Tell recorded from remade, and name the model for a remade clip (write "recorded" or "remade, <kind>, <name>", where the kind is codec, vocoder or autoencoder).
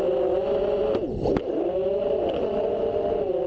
recorded